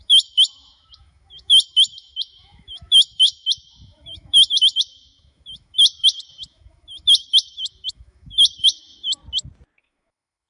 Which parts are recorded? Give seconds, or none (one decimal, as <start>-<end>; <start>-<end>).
9.2-9.8